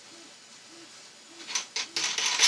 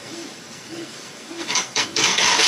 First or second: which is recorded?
first